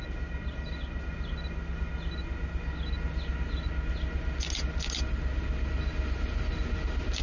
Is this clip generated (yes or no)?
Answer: no